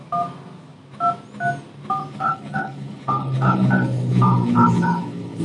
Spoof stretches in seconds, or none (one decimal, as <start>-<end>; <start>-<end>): 2.1-5.4